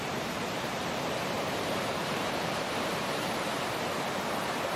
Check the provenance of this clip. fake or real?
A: fake